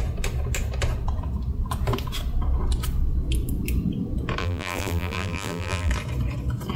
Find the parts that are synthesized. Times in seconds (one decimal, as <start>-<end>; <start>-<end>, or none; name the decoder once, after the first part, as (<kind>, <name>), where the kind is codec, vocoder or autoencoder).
4.4-5.9 (vocoder, BigVGAN v2)

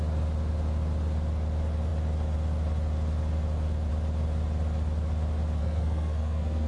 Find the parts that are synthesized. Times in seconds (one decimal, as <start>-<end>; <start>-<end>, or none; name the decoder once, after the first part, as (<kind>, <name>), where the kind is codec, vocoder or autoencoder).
5.6-6.7 (codec, SNAC)

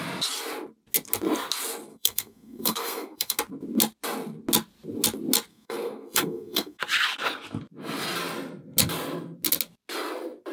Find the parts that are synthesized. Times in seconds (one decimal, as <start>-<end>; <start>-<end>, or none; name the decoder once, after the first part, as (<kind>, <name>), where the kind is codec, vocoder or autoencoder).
1.9-3.4 (codec, SNAC); 5.5-6.8

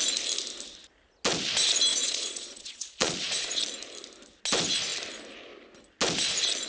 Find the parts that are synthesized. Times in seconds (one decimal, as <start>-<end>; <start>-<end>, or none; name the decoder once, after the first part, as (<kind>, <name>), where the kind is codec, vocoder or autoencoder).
1.9-3.6 (vocoder, Vocos)

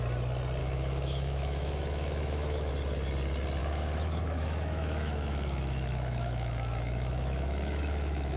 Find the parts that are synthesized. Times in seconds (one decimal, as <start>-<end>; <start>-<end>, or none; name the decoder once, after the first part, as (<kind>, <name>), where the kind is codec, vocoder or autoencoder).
0.6-2.7 (autoencoder, DAC-VAE); 3.6-8.4

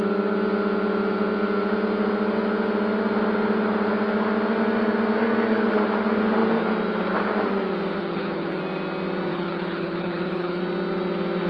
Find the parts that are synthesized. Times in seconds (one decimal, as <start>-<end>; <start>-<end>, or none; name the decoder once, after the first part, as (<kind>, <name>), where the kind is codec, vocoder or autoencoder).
8.0-8.6 (codec, HILCodec); 9.3-10.6